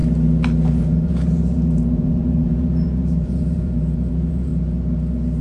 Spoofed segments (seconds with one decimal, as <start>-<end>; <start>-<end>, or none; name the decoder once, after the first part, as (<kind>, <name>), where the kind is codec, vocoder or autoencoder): 0.7-4.5 (vocoder, Vocos)